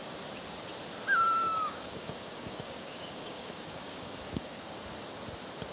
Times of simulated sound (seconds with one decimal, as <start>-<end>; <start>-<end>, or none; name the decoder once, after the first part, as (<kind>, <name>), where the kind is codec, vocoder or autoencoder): 1.4-4.8 (codec, DAC)